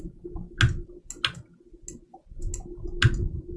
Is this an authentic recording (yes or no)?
yes